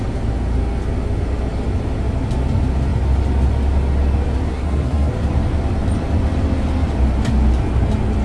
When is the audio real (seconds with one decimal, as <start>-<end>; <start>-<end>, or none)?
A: 0.0-4.5; 5.1-8.2